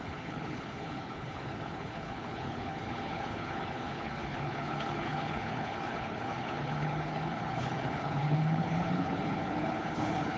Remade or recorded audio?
remade